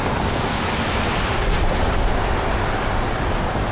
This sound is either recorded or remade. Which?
recorded